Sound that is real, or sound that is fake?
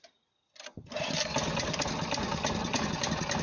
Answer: real